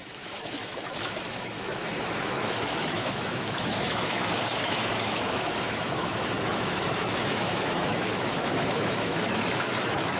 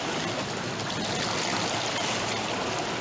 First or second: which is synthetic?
first